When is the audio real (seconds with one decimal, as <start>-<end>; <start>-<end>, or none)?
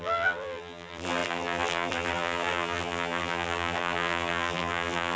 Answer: none